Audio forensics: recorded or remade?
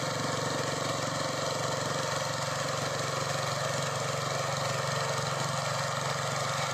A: recorded